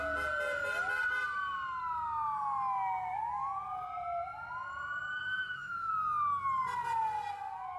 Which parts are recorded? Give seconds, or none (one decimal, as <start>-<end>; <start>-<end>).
0.0-5.1; 5.9-7.8